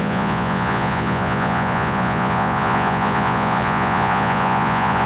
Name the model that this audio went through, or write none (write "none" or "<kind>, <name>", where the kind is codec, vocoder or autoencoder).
vocoder, Vocos